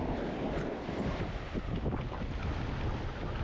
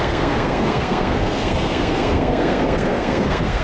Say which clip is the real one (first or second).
first